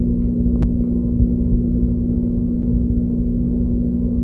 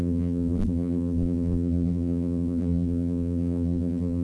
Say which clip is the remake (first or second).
second